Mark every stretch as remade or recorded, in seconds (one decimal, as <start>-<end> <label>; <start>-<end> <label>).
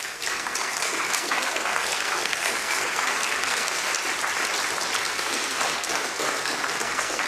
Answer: 0.0-3.9 remade; 3.9-5.0 recorded; 5.0-7.3 remade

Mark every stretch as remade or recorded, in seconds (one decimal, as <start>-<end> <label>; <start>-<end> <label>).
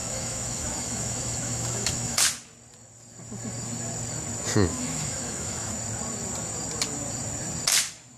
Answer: 0.0-2.2 remade; 2.2-4.7 recorded; 4.7-5.7 remade; 5.7-8.2 recorded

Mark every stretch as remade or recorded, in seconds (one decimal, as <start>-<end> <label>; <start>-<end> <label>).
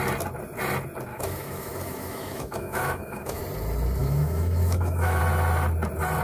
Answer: 0.0-1.1 recorded; 1.1-3.4 remade; 3.4-4.0 recorded; 4.0-5.2 remade; 5.2-6.2 recorded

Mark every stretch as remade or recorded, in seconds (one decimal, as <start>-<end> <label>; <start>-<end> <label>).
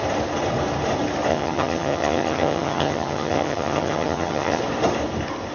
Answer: 0.0-1.3 recorded; 1.3-4.6 remade; 4.6-5.5 recorded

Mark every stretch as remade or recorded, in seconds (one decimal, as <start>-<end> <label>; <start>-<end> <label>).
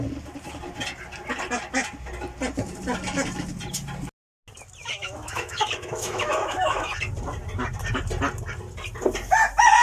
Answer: 0.0-4.8 recorded; 4.8-6.9 remade; 6.9-9.8 recorded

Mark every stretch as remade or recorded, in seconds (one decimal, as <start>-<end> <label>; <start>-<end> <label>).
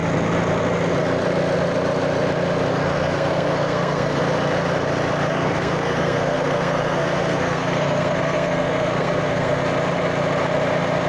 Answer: 0.0-2.7 recorded; 2.7-4.2 remade; 4.2-5.3 recorded; 5.3-9.6 remade; 9.6-11.1 recorded